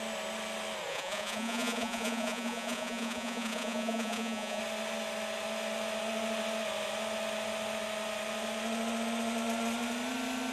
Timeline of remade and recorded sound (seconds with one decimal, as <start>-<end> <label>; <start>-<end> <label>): 0.0-0.9 recorded; 0.9-4.6 remade; 4.6-10.5 recorded